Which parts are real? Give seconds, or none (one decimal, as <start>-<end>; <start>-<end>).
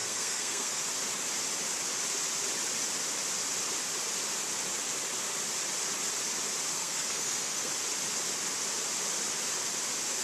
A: 0.8-6.7; 7.7-10.2